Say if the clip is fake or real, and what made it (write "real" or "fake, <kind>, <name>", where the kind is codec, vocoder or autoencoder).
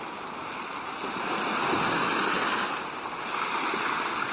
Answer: real